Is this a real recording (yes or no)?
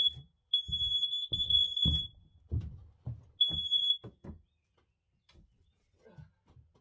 yes